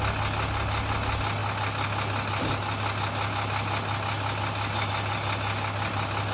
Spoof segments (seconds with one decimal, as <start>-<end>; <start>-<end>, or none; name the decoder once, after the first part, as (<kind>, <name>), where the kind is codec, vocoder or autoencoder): none